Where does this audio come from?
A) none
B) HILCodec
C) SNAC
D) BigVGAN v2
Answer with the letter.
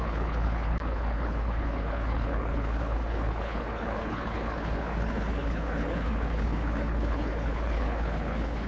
B